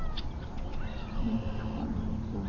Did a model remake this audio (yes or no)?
no